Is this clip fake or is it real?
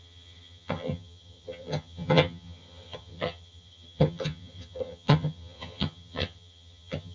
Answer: fake